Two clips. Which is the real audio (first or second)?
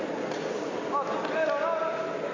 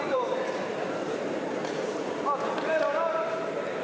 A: first